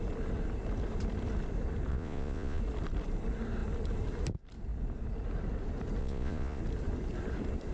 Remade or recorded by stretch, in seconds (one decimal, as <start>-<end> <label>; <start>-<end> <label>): 0.0-1.9 recorded; 1.9-2.6 remade; 2.6-6.0 recorded; 6.0-6.6 remade; 6.6-7.7 recorded